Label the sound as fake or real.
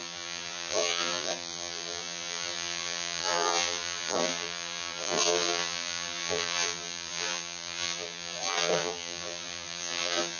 fake